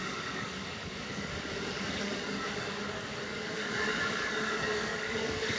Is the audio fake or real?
fake